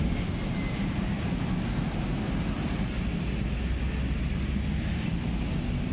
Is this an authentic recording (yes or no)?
yes